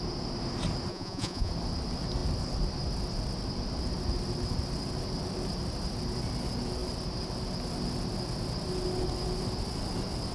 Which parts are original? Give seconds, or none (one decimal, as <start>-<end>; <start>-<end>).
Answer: 0.0-0.9; 1.5-10.3